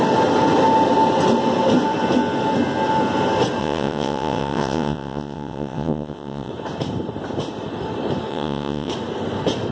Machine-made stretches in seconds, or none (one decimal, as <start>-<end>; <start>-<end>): 3.6-6.5; 8.3-8.9